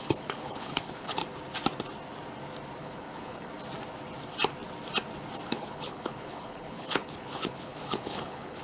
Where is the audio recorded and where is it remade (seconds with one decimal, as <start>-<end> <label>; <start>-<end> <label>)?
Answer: 0.0-1.2 remade; 1.2-2.8 recorded; 2.8-3.5 remade; 3.5-5.5 recorded; 5.5-8.6 remade